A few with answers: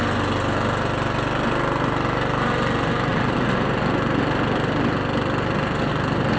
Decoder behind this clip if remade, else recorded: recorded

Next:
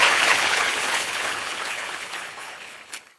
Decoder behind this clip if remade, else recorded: remade, codec, HILCodec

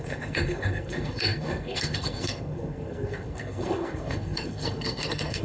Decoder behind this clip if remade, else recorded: remade, codec, SNAC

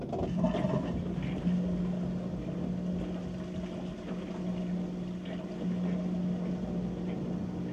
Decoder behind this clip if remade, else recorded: recorded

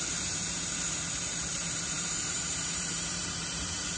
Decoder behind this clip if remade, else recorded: remade, vocoder, BigVGAN v2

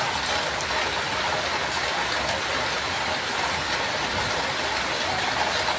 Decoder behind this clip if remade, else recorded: recorded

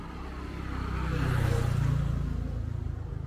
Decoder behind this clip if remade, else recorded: recorded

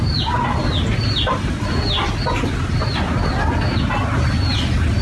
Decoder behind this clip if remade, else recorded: recorded